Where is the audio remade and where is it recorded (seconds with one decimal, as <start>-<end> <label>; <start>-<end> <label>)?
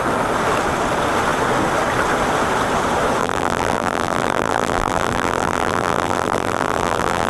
0.0-3.2 recorded; 3.2-7.3 remade